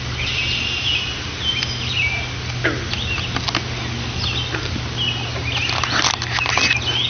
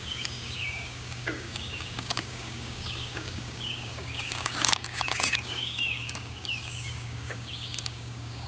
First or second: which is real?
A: first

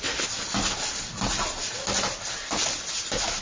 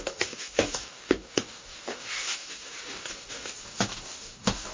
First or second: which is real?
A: first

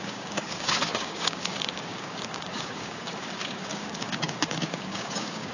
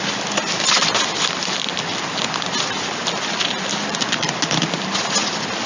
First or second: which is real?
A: second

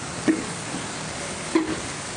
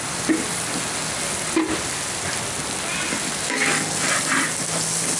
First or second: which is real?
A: second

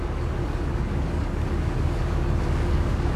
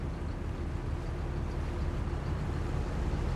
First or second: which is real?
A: second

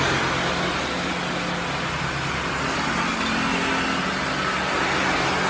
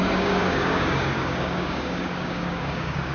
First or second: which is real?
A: first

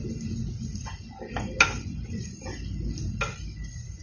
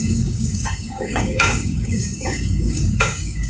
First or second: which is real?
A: first